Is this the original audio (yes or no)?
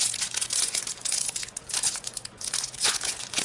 no